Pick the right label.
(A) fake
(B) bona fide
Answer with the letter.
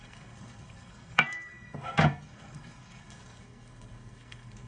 A